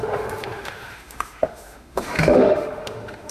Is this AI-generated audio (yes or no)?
yes